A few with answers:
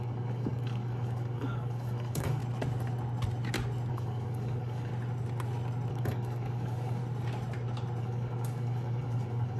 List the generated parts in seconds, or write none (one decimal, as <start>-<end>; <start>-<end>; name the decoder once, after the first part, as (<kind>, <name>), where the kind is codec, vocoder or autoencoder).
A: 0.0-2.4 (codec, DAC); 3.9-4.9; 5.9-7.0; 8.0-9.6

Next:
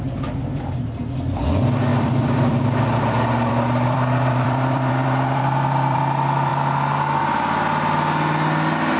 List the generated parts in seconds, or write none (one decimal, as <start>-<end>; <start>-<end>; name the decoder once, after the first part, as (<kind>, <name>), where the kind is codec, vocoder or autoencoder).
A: 1.9-6.0 (vocoder, BigVGAN v2)

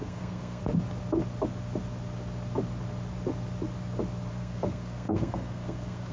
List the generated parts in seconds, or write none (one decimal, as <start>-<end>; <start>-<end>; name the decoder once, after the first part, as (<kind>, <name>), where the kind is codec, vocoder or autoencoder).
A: 0.0-0.6 (codec, SNAC); 4.3-6.1

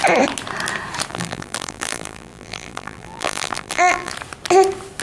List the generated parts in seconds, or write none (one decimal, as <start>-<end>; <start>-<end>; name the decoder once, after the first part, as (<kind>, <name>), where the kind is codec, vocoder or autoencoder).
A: 1.1-4.1 (vocoder, BigVGAN v2)

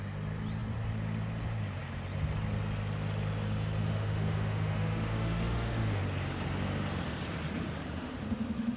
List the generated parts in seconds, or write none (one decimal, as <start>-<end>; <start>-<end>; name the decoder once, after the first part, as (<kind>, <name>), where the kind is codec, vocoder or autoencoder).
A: 3.8-6.0 (autoencoder, DAC-VAE); 8.0-8.8